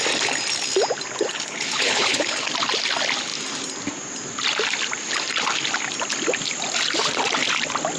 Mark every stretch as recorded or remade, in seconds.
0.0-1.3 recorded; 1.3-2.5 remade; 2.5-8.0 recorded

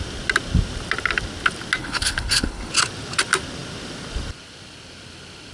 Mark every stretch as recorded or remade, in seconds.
0.0-1.8 recorded; 1.8-2.7 remade; 2.7-5.5 recorded

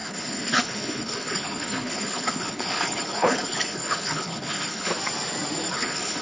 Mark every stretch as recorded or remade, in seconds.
0.0-4.9 remade; 4.9-5.7 recorded; 5.7-6.2 remade

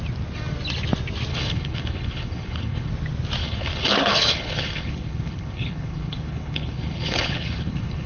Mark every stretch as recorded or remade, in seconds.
0.0-1.3 recorded; 1.3-2.9 remade; 2.9-3.4 recorded; 3.4-8.1 remade

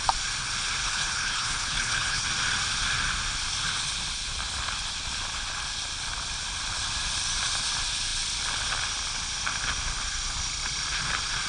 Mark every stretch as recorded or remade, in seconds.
0.0-0.8 recorded; 0.8-2.2 remade; 2.2-11.5 recorded

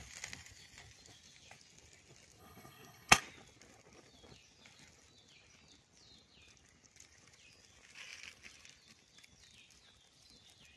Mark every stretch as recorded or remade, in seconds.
0.0-2.4 recorded; 2.4-3.2 remade; 3.2-10.8 recorded

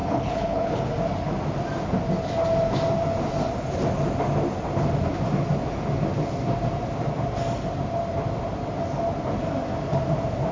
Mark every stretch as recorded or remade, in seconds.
0.0-0.8 remade; 0.8-10.5 recorded